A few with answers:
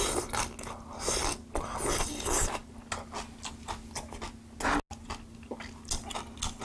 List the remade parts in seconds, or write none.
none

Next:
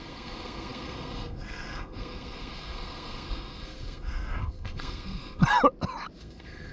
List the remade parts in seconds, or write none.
0.0-5.4 (codec, SNAC); 6.2-6.7